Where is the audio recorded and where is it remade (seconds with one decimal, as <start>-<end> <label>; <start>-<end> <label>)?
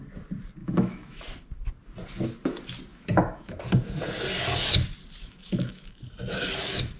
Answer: 0.0-0.6 recorded; 0.6-1.2 remade; 1.2-2.9 recorded; 2.9-3.6 remade; 3.6-5.2 recorded; 5.2-6.0 remade; 6.0-7.0 recorded